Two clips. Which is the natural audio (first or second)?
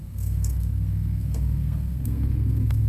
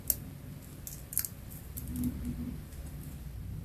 second